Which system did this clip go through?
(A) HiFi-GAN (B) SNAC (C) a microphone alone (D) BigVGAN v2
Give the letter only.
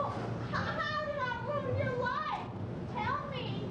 C